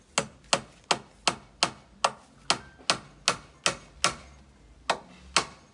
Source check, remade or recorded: recorded